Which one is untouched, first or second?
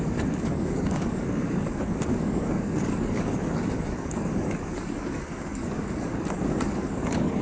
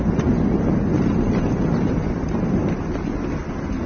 second